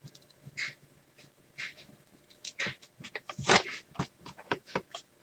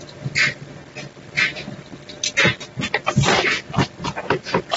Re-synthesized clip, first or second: first